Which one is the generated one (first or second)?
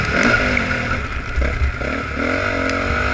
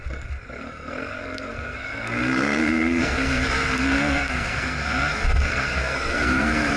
second